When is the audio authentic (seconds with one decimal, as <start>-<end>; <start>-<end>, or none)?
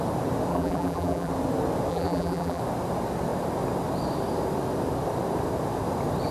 0.0-0.5; 1.3-1.9; 2.6-6.3